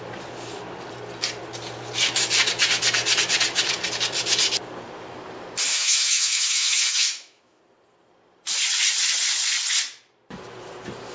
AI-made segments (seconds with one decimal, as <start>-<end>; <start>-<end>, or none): 5.7-7.6